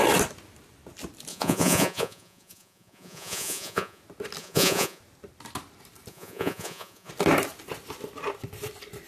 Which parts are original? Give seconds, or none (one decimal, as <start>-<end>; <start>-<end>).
0.0-1.3; 4.0-4.4; 5.0-6.1; 7.1-9.1